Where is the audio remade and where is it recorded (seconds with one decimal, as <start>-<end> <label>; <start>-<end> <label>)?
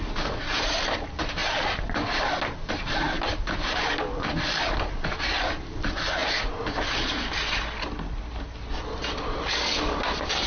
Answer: 0.0-10.5 recorded